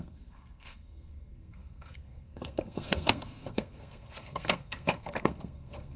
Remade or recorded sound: remade